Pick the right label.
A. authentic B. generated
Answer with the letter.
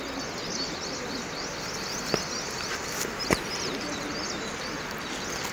A